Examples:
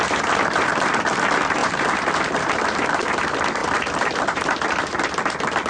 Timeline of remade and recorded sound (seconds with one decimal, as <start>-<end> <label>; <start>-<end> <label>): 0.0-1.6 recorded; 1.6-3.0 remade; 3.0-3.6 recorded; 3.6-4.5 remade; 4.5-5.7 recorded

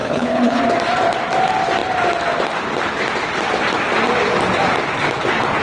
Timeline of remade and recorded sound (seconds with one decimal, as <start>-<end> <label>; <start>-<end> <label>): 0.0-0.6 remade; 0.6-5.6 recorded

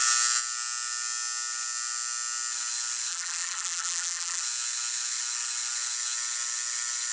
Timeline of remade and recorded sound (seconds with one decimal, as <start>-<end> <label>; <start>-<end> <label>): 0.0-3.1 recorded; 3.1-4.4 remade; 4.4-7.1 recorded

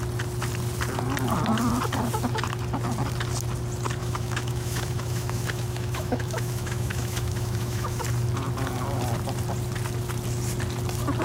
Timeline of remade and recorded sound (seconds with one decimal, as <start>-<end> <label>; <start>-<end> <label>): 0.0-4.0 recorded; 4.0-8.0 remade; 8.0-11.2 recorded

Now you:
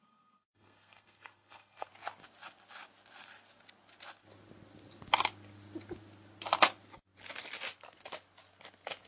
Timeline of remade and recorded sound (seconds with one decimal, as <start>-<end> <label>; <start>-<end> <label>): 0.0-1.9 remade; 1.9-9.1 recorded